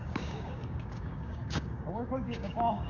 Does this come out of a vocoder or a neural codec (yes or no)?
yes